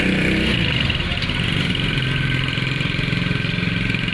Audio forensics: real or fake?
real